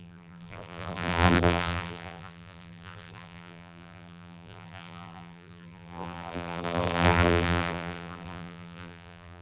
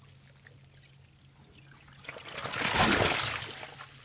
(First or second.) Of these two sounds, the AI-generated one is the first